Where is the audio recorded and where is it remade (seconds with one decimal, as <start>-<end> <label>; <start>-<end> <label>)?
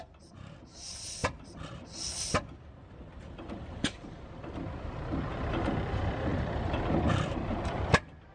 0.0-1.2 recorded; 1.2-5.3 remade; 5.3-6.3 recorded; 6.3-7.6 remade; 7.6-8.3 recorded